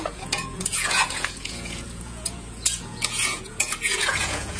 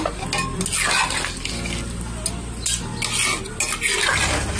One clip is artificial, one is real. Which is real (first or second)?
second